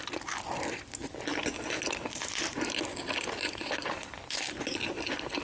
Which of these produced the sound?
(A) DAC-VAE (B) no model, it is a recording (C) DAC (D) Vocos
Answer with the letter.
B